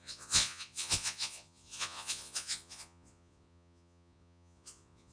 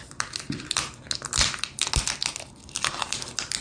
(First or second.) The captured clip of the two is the second